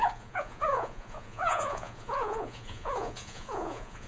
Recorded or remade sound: remade